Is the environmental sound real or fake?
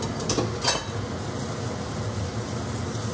real